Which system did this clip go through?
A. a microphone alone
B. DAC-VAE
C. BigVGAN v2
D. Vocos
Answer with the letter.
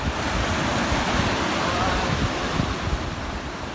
A